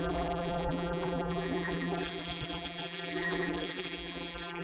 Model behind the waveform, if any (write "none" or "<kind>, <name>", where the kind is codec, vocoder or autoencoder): vocoder, BigVGAN v2